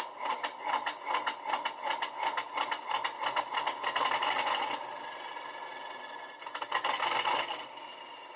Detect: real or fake real